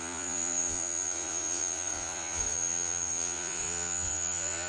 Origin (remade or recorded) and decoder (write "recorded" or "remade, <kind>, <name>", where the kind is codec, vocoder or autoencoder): remade, vocoder, Vocos